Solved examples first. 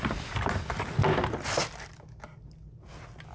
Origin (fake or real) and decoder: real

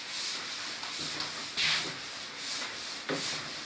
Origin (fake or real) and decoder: real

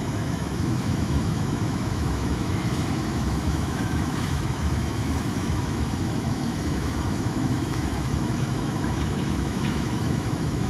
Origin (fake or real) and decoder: fake, autoencoder, DAC-VAE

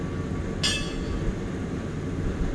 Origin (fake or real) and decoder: real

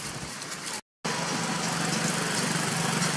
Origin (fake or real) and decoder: real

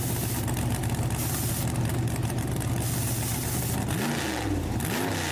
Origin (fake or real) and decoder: real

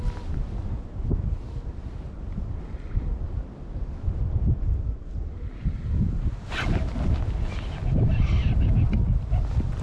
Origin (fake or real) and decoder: real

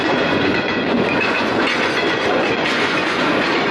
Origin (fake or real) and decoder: fake, vocoder, Vocos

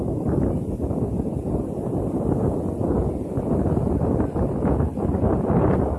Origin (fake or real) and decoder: real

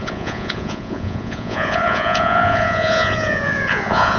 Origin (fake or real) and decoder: fake, vocoder, Vocos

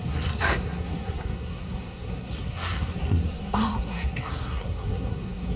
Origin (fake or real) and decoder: fake, codec, SNAC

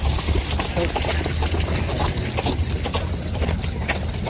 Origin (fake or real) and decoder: real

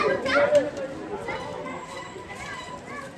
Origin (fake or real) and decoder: real